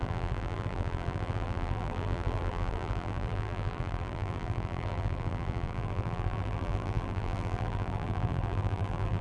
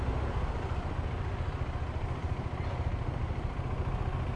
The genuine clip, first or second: second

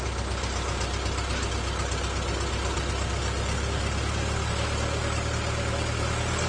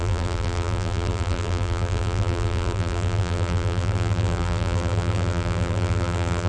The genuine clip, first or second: first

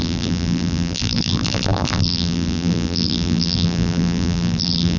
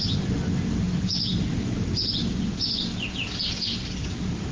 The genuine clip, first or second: second